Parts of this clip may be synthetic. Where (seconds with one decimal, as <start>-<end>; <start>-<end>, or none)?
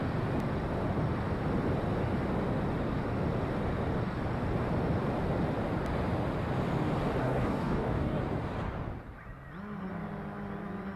7.2-8.2